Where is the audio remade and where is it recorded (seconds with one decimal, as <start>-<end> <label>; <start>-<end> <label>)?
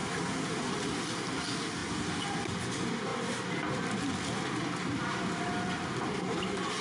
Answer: 0.0-6.8 recorded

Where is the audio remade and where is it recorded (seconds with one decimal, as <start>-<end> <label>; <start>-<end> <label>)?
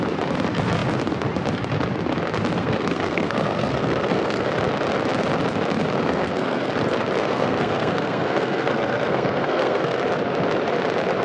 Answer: 0.0-2.6 recorded; 2.6-4.5 remade; 4.5-6.0 recorded; 6.0-6.7 remade; 6.7-7.2 recorded; 7.2-10.0 remade; 10.0-11.2 recorded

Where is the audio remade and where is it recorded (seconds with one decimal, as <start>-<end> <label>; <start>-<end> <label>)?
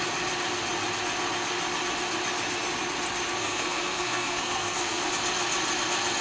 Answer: 0.0-3.4 recorded; 3.4-5.0 remade; 5.0-6.2 recorded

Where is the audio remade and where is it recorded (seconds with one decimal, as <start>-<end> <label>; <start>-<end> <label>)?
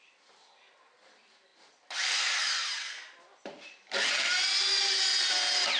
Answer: 0.0-5.8 recorded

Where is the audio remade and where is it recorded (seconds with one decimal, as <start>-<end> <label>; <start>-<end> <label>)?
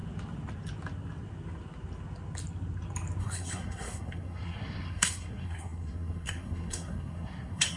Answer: 0.0-3.2 recorded; 3.2-7.8 remade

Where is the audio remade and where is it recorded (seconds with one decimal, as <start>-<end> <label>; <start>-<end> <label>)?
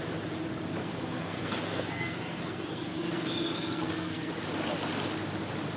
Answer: 0.0-0.8 recorded; 0.8-4.3 remade; 4.3-5.8 recorded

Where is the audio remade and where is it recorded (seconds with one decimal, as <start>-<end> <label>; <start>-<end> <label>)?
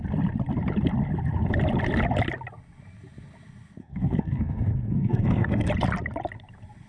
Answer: 0.0-3.8 recorded; 3.8-5.7 remade; 5.7-6.9 recorded